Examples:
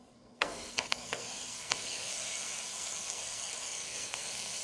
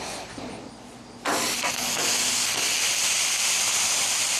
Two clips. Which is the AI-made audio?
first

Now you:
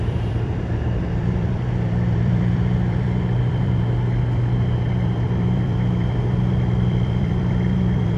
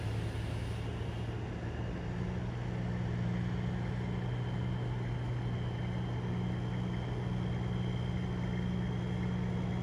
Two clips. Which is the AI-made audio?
first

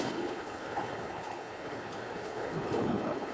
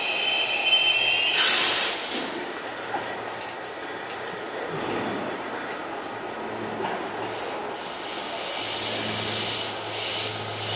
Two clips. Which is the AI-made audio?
first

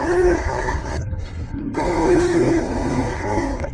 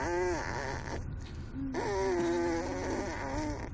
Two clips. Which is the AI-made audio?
first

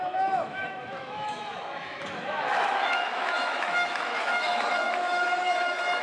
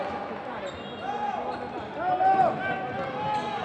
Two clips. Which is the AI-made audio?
first